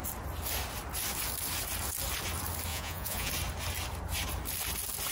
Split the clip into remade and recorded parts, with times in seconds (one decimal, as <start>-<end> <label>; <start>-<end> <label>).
0.0-2.7 recorded; 2.7-3.3 remade; 3.3-5.1 recorded